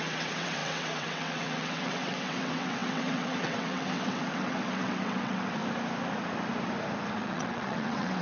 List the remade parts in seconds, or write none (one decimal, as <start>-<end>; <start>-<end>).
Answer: 0.0-5.6; 7.1-8.2